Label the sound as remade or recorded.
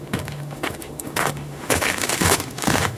remade